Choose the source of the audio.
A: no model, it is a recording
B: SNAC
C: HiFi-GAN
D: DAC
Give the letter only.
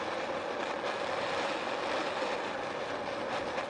A